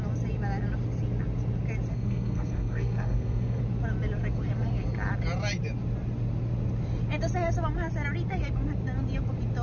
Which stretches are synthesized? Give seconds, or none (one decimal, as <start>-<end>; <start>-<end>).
1.9-3.6